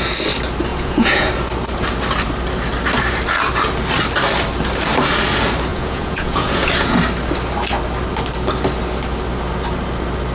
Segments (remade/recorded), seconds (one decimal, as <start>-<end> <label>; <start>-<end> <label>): 0.0-0.7 recorded; 0.7-1.3 remade; 1.3-5.7 recorded; 5.7-7.0 remade; 7.0-10.3 recorded